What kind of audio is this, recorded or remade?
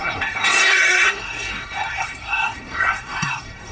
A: remade